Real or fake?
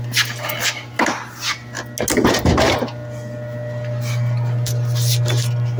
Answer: real